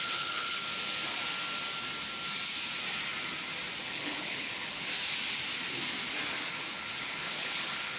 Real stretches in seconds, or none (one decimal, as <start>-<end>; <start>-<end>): 0.6-3.8; 4.9-6.5